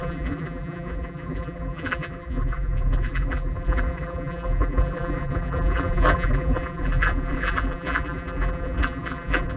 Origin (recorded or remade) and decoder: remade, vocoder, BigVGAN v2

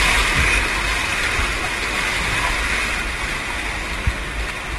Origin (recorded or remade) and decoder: recorded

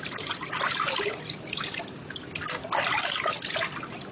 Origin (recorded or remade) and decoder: recorded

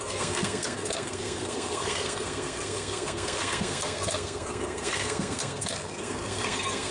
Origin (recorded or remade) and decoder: remade, codec, SNAC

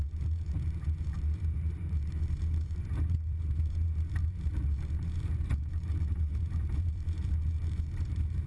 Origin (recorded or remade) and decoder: remade, vocoder, BigVGAN v2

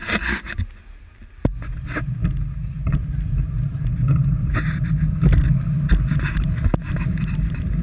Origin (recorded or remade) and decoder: recorded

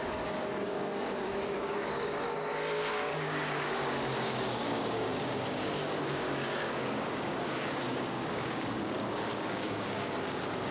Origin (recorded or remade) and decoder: remade, codec, DAC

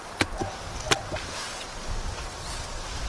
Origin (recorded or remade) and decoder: recorded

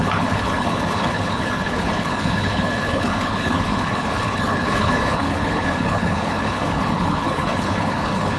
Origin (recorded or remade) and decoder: remade, codec, HILCodec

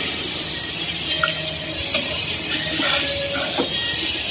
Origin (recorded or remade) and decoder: remade, vocoder, BigVGAN v2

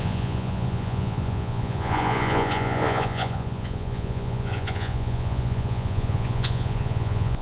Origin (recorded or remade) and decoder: remade, vocoder, Vocos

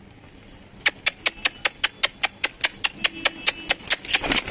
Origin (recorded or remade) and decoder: recorded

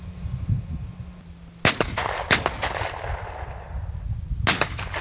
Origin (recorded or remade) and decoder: recorded